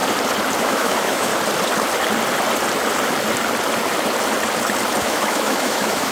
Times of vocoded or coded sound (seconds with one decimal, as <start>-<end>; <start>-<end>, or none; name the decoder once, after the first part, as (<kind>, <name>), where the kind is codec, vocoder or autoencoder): 0.6-1.3 (autoencoder, DAC-VAE); 5.0-6.1